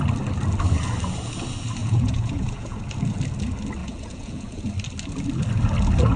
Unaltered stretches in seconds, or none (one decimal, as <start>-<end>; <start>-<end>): 0.0-1.8; 2.8-3.8; 4.6-6.2